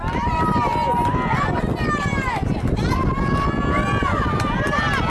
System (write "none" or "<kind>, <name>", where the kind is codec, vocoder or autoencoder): none